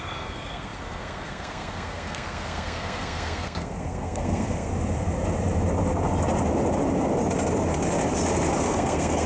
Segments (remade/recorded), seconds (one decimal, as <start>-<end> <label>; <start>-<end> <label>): 0.0-4.7 remade; 4.7-8.6 recorded; 8.6-9.3 remade